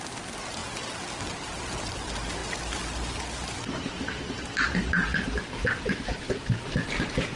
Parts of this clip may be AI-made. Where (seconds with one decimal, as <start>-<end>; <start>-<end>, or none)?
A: none